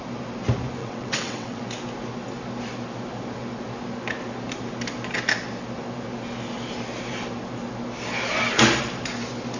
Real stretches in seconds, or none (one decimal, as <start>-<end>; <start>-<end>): 0.0-0.8; 1.6-9.6